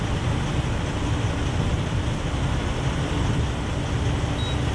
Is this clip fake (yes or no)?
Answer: no